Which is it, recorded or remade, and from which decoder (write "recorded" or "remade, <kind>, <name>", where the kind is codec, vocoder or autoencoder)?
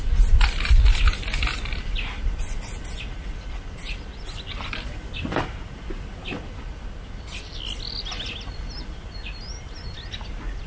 recorded